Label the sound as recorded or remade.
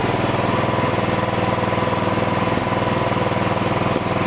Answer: recorded